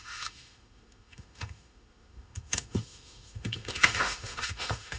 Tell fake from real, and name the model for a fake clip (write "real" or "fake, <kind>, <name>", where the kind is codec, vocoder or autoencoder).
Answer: fake, autoencoder, DAC-VAE